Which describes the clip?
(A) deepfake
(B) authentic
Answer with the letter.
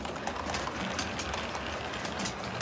B